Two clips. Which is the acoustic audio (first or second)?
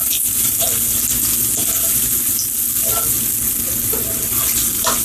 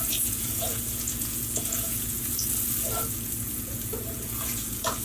first